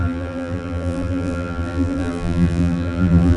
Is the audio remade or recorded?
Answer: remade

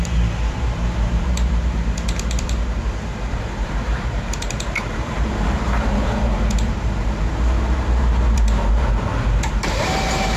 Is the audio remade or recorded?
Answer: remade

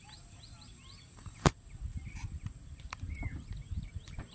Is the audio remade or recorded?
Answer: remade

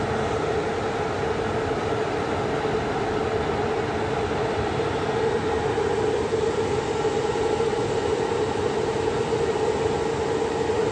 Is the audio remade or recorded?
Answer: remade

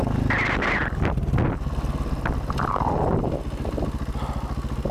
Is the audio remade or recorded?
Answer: recorded